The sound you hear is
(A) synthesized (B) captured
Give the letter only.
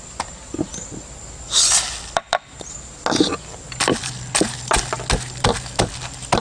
B